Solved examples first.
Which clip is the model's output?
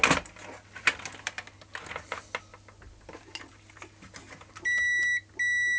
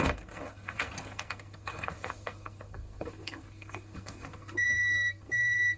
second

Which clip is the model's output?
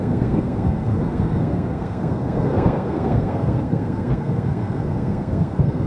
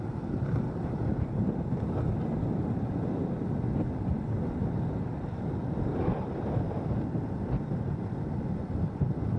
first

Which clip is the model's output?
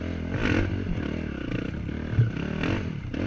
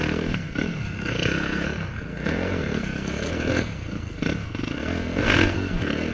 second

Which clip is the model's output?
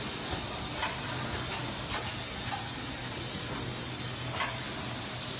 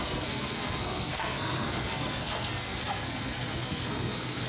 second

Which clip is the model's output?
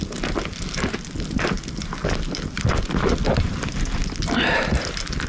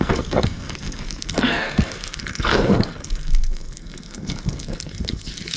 second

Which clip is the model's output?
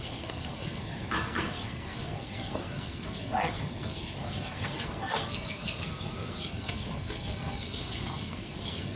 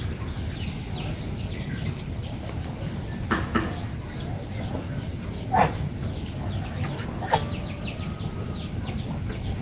first